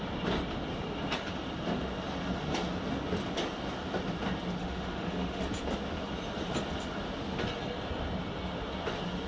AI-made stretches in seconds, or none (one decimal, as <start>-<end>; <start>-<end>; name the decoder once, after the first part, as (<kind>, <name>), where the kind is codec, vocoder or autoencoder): 4.6-5.4 (autoencoder, DAC-VAE)

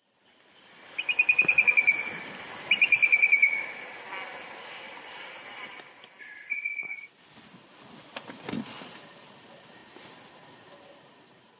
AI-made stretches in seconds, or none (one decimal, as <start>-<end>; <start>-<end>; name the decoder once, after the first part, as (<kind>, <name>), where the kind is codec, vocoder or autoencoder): none